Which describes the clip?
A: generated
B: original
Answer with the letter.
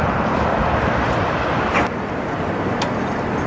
B